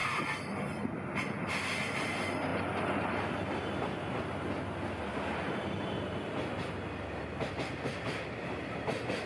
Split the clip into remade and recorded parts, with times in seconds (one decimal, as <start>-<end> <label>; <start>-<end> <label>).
0.0-9.3 recorded